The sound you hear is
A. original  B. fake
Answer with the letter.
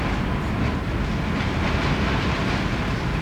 A